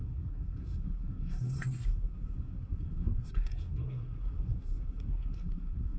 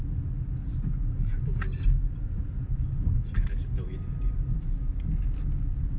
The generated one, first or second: first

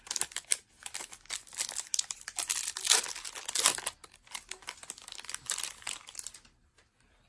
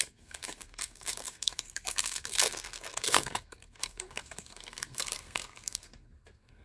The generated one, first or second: second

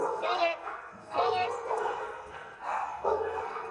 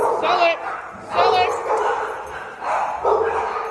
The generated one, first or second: first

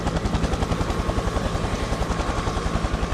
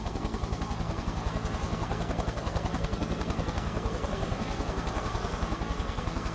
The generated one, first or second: second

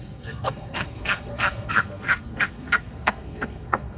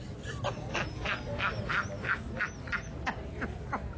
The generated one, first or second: first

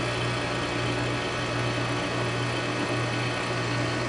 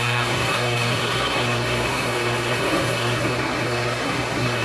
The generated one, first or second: second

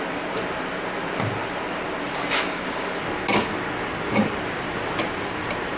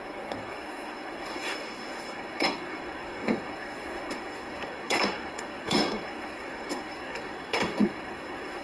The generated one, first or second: second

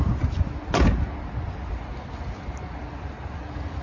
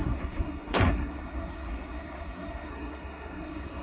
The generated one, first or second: second